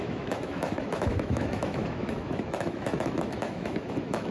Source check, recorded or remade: remade